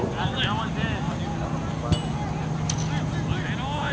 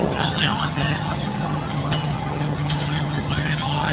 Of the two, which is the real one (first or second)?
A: first